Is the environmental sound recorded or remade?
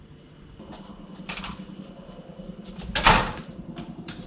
recorded